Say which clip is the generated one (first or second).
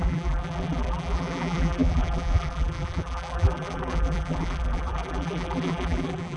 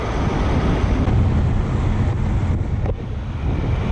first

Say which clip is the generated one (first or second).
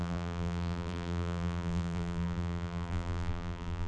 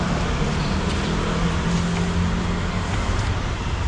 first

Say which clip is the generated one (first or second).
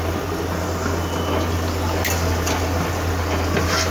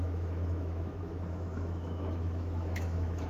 second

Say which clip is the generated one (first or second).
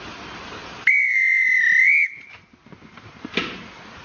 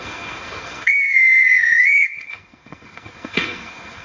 second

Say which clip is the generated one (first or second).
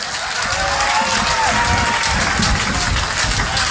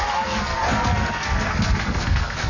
second